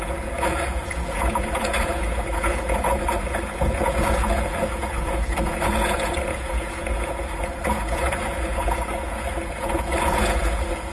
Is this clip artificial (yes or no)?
yes